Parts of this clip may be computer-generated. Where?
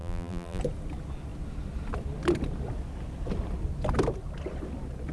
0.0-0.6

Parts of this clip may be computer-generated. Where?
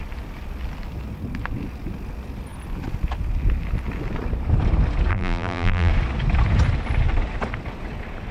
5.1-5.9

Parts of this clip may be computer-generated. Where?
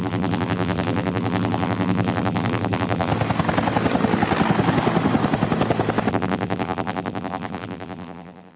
0.0-3.1; 6.1-8.6